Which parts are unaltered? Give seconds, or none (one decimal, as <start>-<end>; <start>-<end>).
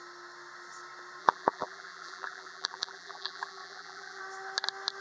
0.0-1.2; 4.2-5.0